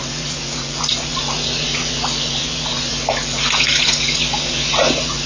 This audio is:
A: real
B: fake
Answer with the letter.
B